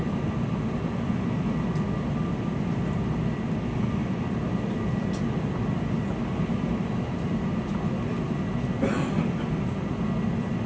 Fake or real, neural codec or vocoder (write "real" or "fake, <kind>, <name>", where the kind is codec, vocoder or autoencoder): real